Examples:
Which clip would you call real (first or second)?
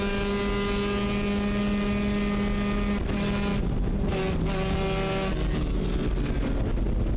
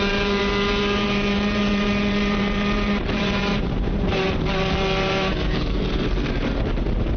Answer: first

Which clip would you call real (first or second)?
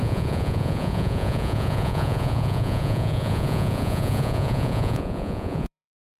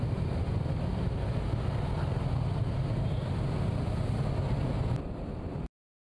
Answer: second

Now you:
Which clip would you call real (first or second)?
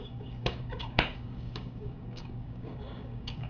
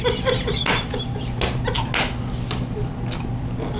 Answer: second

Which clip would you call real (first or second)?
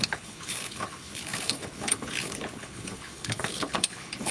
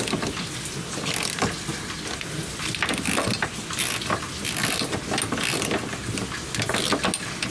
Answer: second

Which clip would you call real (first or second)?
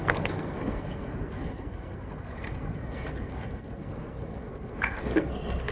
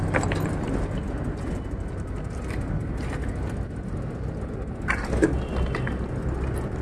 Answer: second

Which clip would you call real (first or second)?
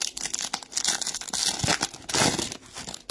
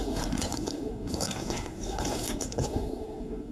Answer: first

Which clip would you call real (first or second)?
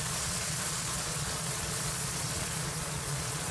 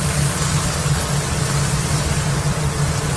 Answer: second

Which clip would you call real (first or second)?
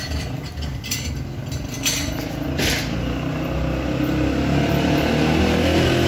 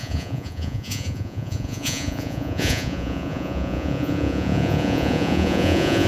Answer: first